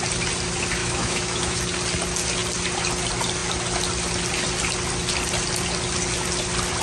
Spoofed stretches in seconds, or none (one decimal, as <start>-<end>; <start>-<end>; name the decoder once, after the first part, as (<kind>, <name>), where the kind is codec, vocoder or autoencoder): 0.8-1.6 (autoencoder, DAC-VAE)

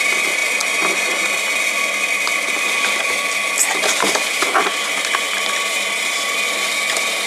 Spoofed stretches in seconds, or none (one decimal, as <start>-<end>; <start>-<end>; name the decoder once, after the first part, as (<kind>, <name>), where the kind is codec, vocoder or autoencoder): none